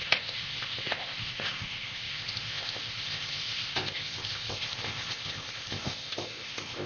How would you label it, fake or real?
fake